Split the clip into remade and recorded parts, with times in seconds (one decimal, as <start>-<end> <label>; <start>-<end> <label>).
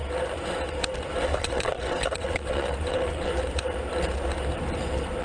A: 0.0-1.4 recorded; 1.4-3.3 remade; 3.3-5.2 recorded